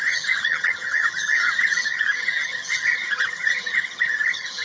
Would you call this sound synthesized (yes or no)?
yes